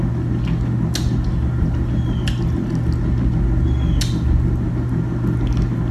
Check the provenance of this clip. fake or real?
real